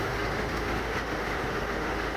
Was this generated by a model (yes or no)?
yes